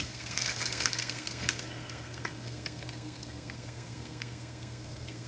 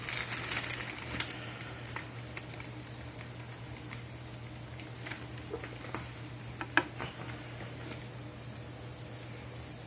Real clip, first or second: second